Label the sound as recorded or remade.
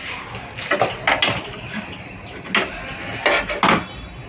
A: recorded